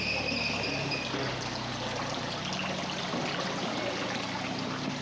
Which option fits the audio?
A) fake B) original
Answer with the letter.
B